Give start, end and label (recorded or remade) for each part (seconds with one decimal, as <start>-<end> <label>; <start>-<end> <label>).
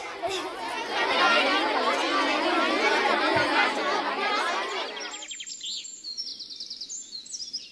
0.0-7.7 recorded